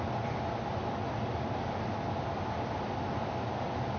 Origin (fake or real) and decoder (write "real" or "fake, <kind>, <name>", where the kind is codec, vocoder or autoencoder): real